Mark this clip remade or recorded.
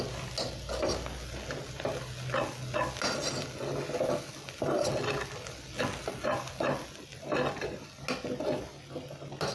recorded